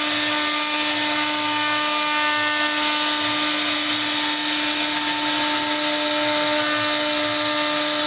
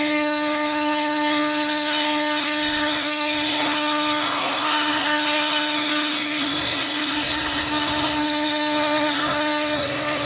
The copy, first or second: second